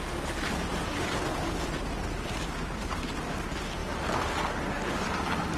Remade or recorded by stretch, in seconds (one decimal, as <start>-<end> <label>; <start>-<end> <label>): 0.0-0.7 recorded; 0.7-3.0 remade; 3.0-5.6 recorded